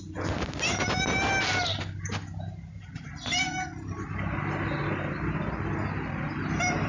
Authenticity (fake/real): real